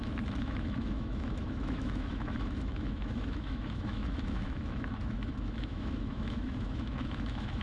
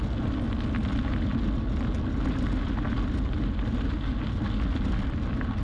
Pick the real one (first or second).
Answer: second